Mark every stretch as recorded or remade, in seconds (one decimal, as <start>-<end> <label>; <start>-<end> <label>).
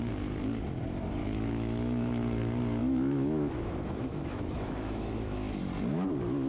0.0-1.2 recorded; 1.2-2.2 remade; 2.2-2.8 recorded; 2.8-5.6 remade; 5.6-6.5 recorded